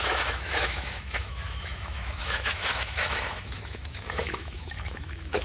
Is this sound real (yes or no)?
no